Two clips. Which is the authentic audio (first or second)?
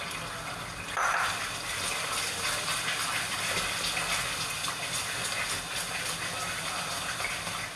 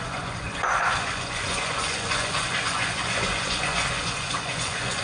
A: first